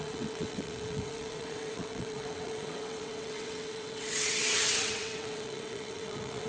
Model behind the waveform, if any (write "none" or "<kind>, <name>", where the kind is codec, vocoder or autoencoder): vocoder, WaveNeXt